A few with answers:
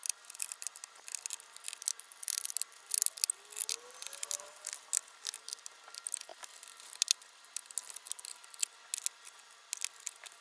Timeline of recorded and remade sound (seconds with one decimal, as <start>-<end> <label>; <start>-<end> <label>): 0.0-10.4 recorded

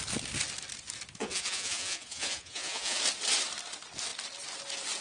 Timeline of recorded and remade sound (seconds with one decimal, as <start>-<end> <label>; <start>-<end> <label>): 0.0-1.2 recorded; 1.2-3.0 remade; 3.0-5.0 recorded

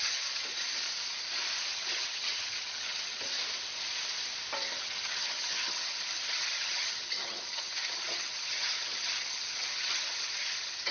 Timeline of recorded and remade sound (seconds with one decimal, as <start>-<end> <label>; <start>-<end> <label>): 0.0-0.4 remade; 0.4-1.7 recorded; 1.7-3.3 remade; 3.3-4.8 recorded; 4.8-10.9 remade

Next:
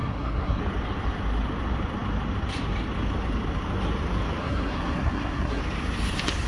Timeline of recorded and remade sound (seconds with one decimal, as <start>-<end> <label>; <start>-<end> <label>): 0.0-0.6 remade; 0.6-4.4 recorded; 4.4-5.6 remade; 5.6-6.5 recorded

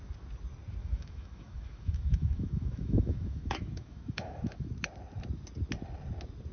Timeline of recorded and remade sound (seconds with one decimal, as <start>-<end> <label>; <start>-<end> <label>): 0.0-0.8 recorded; 0.8-4.7 remade; 4.7-6.5 recorded